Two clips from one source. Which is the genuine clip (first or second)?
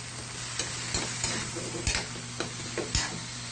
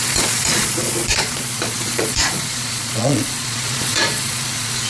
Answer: first